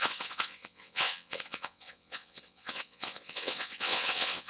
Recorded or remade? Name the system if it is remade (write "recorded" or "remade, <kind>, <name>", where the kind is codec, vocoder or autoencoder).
remade, vocoder, WaveNeXt